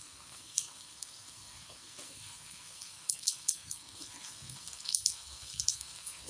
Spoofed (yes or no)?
yes